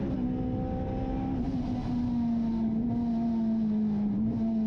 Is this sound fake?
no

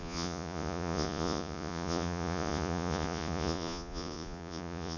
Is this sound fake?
yes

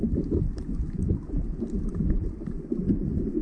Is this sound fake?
no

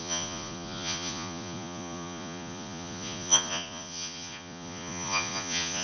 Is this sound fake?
yes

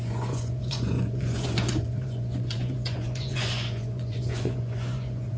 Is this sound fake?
yes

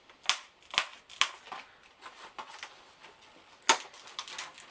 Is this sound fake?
no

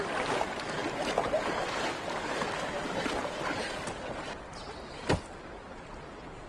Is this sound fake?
no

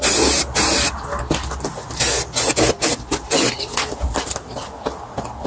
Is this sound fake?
no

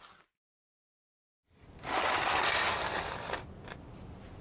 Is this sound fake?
no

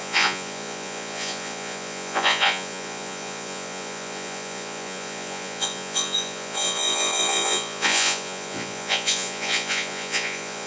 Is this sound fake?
yes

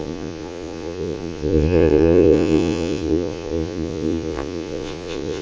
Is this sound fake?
yes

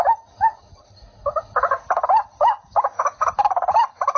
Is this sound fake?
no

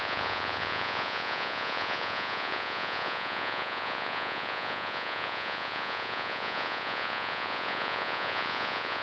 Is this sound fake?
yes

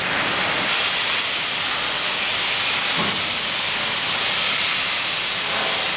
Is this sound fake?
no